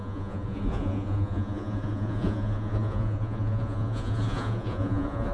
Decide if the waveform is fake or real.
fake